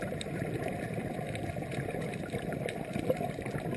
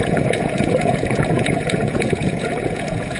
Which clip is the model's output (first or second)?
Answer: second